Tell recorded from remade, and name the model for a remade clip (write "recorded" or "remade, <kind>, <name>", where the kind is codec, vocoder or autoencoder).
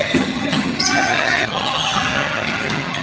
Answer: remade, vocoder, HiFi-GAN